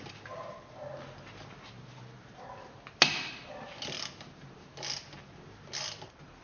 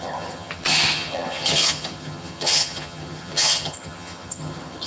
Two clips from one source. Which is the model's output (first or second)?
second